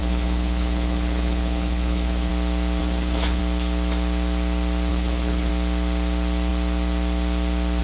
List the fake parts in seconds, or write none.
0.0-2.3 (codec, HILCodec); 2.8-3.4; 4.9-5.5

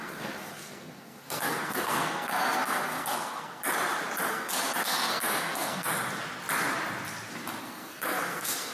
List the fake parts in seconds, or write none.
0.0-3.6 (codec, SNAC); 4.3-5.9; 7.6-8.7

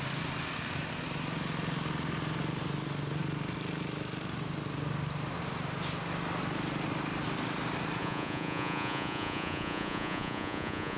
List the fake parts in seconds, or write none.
8.0-11.0 (vocoder, Vocos)

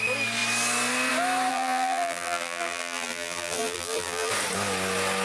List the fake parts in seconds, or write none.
1.5-4.3 (vocoder, BigVGAN v2)

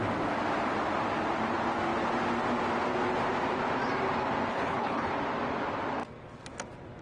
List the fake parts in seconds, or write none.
4.5-5.1 (codec, HILCodec)

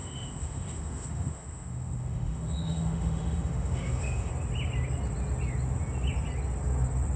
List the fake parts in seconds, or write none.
0.0-4.3 (autoencoder, DAC-VAE)

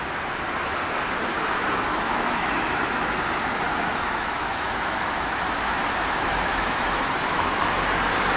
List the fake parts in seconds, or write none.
1.9-2.6 (autoencoder, DAC-VAE); 3.7-7.6

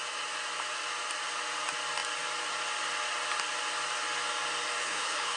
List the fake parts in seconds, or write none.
4.8-5.4 (codec, HILCodec)